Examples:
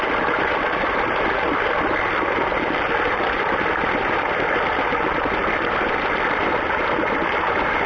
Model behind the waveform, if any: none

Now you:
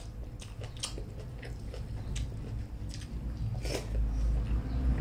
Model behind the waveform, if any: none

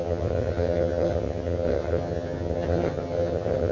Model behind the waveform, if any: vocoder, HiFi-GAN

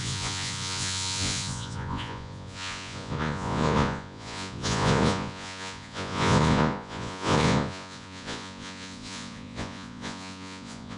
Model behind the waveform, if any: vocoder, Vocos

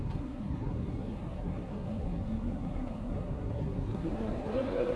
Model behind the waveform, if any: codec, SNAC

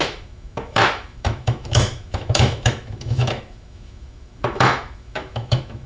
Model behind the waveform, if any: autoencoder, DAC-VAE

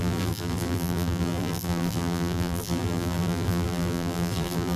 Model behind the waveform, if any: vocoder, BigVGAN v2